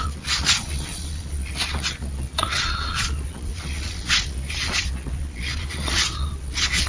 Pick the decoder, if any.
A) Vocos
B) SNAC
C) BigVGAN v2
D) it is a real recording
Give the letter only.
A